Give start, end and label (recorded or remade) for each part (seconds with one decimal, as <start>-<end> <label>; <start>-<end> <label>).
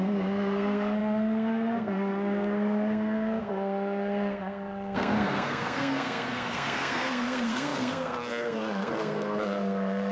0.0-10.1 remade